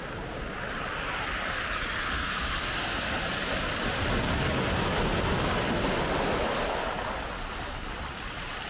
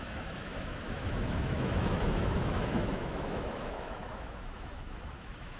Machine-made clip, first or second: second